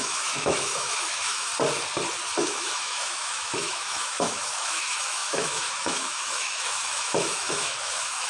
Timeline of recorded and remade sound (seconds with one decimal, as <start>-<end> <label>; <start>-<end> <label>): 0.0-1.5 remade; 1.5-2.4 recorded; 2.4-8.3 remade